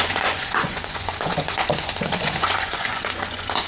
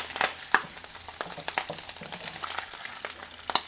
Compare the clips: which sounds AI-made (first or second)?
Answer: first